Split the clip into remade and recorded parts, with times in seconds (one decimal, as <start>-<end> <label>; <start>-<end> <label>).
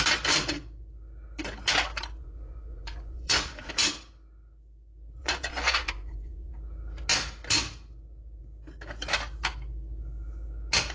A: 0.0-2.2 recorded; 2.2-3.7 remade; 3.7-5.2 recorded; 5.2-6.5 remade; 6.5-10.9 recorded